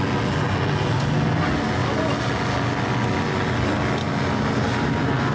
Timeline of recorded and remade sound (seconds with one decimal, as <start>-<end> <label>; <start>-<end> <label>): 0.0-5.3 recorded